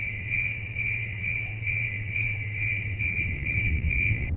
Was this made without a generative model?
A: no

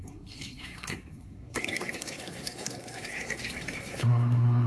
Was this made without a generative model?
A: no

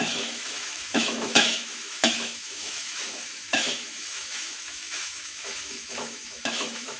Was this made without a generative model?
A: no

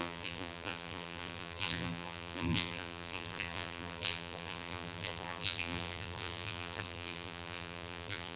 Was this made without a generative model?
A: no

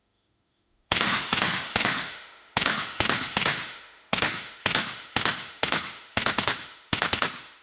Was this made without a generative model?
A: no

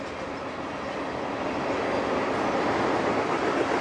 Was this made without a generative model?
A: yes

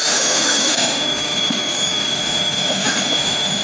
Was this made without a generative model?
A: no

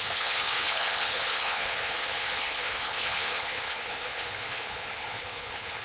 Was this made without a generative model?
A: no